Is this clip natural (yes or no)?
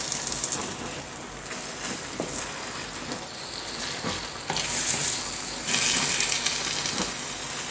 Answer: yes